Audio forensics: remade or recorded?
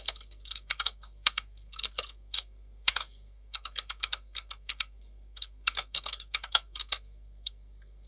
remade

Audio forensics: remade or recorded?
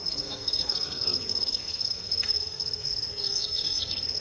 remade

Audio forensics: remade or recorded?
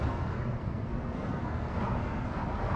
remade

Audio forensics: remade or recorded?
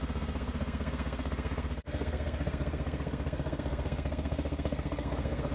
remade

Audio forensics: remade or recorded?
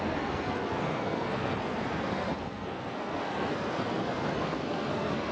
remade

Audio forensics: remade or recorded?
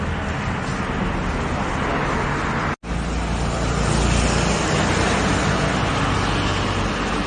recorded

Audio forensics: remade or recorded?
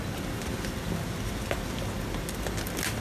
recorded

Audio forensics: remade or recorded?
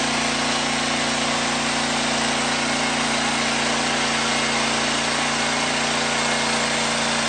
recorded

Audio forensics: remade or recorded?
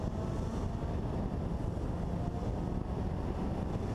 recorded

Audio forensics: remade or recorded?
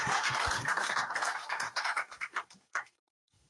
remade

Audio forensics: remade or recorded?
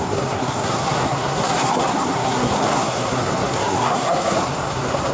remade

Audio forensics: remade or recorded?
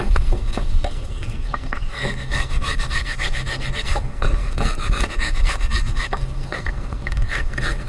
remade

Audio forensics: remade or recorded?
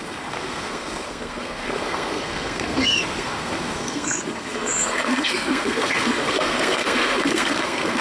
remade